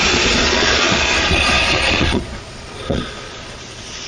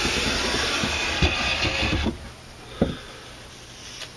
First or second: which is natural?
second